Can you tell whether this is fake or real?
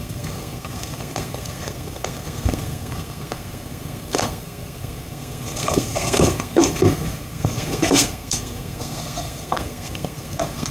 fake